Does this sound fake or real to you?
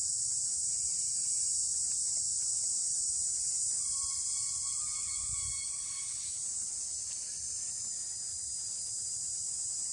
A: real